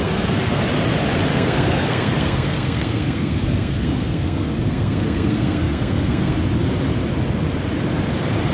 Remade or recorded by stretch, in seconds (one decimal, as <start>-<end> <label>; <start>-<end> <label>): 0.0-0.6 remade; 0.6-1.3 recorded; 1.3-6.4 remade; 6.4-8.5 recorded